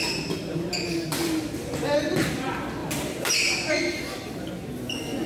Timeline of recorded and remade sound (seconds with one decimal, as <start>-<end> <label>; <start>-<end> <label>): 0.0-5.3 recorded